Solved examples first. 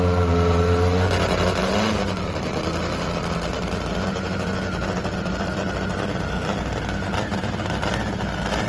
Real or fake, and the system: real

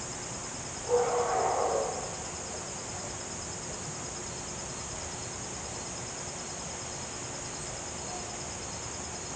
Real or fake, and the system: real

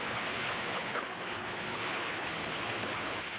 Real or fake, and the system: fake, codec, HILCodec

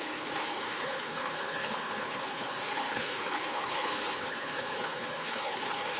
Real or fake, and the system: fake, codec, HILCodec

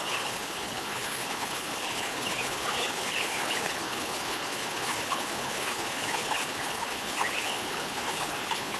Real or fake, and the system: fake, codec, HILCodec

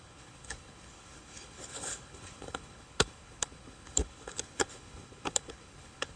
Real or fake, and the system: fake, codec, HILCodec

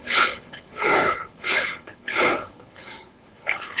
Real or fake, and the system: fake, codec, HILCodec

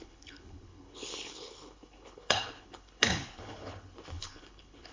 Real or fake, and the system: fake, codec, HILCodec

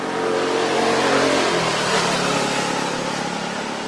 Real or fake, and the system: real